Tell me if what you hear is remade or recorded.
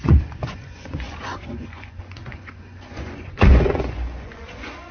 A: remade